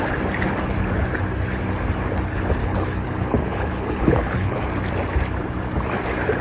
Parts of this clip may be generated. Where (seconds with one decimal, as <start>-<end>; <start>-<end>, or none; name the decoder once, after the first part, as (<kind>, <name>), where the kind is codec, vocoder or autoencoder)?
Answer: 2.6-4.6 (codec, HILCodec)